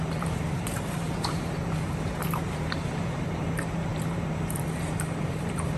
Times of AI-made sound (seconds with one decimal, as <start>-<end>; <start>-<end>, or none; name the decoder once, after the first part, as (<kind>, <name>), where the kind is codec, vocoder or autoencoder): 0.0-5.8 (vocoder, BigVGAN v2)